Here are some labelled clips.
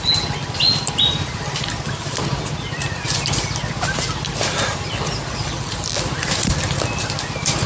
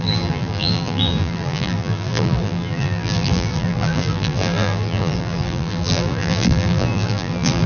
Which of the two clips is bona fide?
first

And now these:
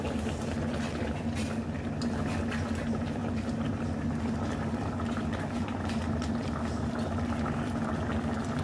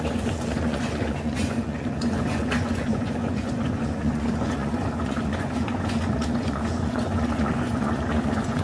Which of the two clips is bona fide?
first